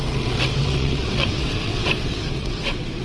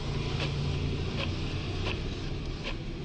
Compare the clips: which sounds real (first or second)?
second